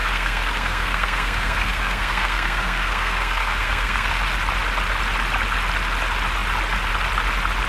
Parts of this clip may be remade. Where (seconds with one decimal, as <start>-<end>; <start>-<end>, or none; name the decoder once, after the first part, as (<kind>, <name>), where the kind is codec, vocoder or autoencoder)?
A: 0.0-4.2 (codec, SNAC)